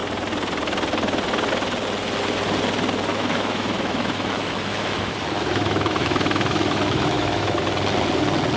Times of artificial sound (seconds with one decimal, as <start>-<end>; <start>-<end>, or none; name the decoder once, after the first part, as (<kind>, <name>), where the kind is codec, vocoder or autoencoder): 3.1-7.6 (autoencoder, DAC-VAE)